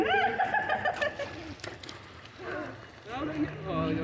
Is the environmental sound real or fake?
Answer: real